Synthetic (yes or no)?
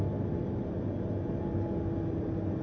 no